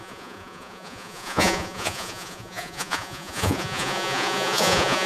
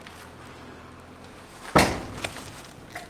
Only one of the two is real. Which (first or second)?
second